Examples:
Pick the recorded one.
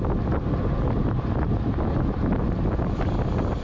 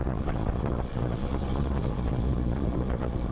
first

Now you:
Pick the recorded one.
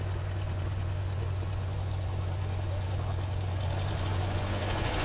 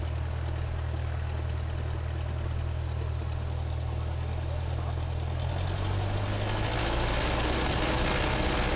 second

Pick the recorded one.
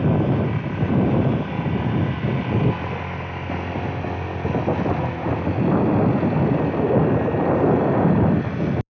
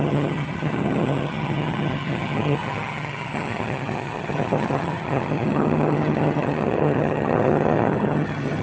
first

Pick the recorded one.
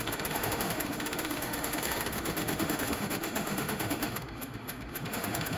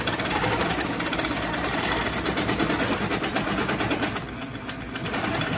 second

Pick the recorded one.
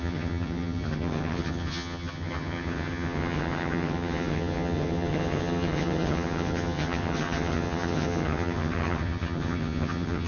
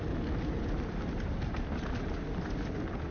second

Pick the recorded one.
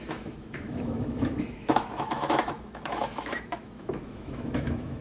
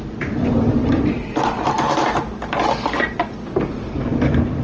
second